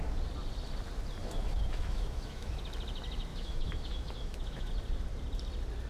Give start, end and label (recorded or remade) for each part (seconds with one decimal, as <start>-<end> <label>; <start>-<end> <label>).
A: 0.0-1.2 recorded; 1.2-2.6 remade; 2.6-3.3 recorded; 3.3-4.7 remade; 4.7-5.9 recorded